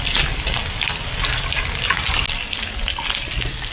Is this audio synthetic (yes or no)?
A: no